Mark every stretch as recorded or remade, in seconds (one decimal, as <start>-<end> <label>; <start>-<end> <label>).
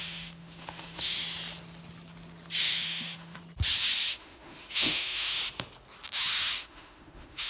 0.0-1.2 remade; 1.2-2.6 recorded; 2.6-3.4 remade; 3.4-4.1 recorded; 4.1-5.4 remade; 5.4-6.5 recorded; 6.5-7.5 remade